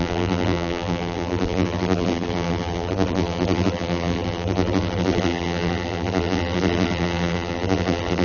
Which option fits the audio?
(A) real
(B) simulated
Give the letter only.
B